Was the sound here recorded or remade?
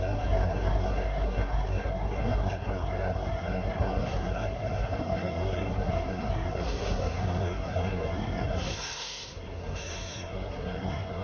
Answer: remade